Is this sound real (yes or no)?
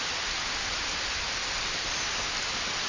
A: yes